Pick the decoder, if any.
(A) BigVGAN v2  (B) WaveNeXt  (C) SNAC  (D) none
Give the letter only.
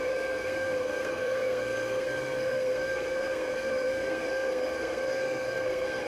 C